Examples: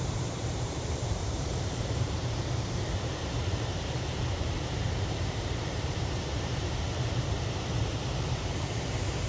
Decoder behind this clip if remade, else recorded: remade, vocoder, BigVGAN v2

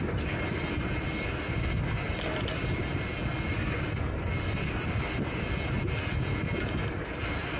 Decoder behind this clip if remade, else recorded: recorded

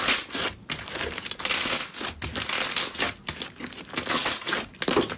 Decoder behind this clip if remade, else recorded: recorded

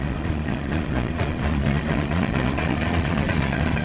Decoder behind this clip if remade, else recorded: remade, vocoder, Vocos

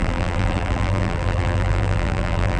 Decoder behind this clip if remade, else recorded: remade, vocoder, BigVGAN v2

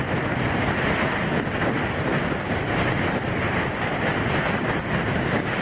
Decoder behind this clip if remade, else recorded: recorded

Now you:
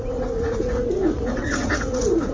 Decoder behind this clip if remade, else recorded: remade, vocoder, Vocos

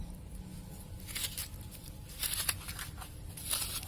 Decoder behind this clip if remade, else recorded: recorded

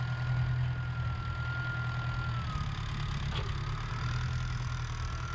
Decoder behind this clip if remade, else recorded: recorded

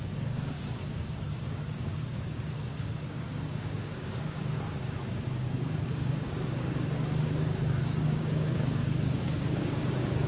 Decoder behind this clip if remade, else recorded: remade, codec, DAC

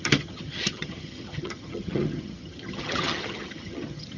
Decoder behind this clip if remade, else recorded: remade, vocoder, HiFi-GAN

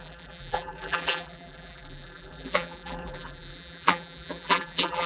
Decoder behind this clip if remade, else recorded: remade, vocoder, BigVGAN v2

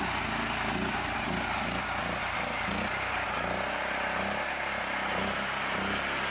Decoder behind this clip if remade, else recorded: recorded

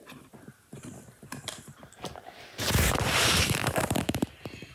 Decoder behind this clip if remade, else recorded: remade, vocoder, BigVGAN v2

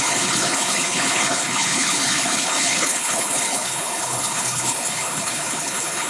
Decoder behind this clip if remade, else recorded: remade, codec, HILCodec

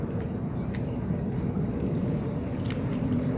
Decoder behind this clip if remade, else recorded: recorded